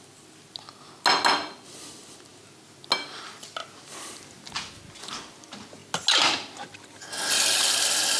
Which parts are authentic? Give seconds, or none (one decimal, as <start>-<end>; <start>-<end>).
0.0-8.2